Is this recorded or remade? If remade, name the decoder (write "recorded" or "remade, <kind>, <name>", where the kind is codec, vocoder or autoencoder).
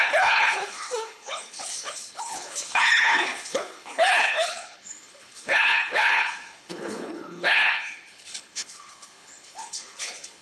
remade, codec, HILCodec